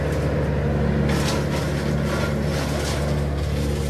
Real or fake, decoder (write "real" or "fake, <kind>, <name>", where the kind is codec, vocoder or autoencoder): real